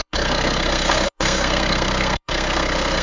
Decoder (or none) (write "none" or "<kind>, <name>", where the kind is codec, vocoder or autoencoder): codec, SNAC